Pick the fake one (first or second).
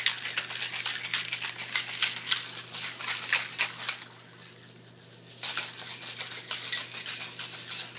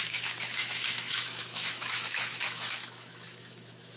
second